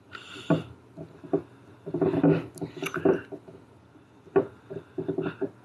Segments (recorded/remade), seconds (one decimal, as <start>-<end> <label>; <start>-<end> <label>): 0.0-5.6 recorded